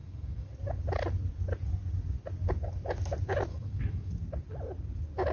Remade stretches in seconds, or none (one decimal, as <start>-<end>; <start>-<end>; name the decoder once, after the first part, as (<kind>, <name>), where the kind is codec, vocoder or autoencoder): 0.0-0.5 (autoencoder, DAC-VAE); 3.5-4.1